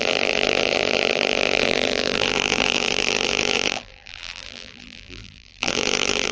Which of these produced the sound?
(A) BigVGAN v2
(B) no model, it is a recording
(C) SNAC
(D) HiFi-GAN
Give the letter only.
A